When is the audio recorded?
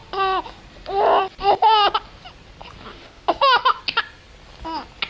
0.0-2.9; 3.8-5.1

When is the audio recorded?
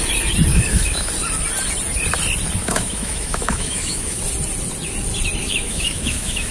0.0-0.5; 1.1-2.6; 4.2-5.4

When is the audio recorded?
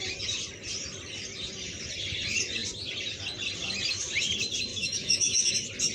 0.0-4.7; 5.5-5.9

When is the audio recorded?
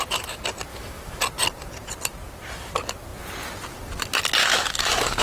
0.0-0.7; 1.2-4.4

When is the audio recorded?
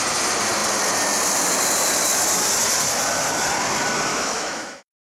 0.0-4.1